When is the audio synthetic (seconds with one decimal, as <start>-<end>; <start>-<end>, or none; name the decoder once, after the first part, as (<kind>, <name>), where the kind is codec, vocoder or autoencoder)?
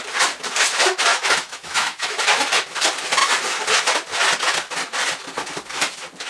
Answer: 1.1-2.2 (autoencoder, DAC-VAE)